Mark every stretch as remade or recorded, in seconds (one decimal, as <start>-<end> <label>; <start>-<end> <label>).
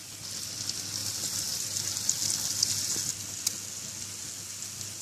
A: 0.0-5.0 recorded